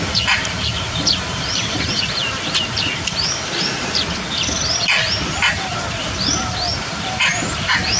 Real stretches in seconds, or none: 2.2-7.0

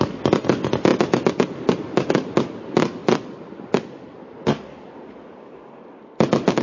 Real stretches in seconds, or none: 0.0-0.9; 2.1-3.0; 5.4-6.6

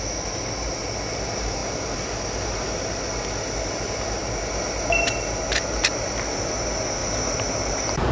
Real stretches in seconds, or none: 0.0-7.0